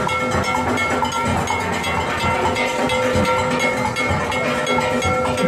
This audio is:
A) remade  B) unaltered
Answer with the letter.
B